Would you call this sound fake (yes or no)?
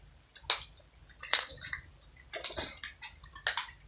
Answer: no